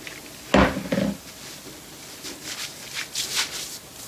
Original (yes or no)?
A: yes